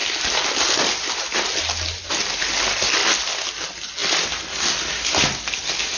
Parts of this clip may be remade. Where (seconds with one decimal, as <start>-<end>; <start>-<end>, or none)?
none